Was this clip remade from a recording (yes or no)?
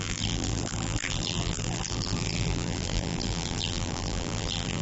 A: yes